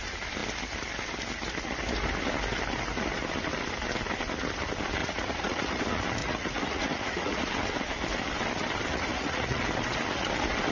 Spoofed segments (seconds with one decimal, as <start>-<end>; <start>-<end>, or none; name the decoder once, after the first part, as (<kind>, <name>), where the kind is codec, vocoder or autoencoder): 5.0-5.8 (vocoder, Vocos); 6.2-7.5; 8.9-9.6